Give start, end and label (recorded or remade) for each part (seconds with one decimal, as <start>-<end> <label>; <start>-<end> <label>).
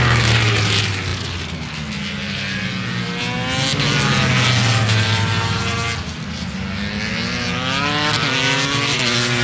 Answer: 0.0-9.4 recorded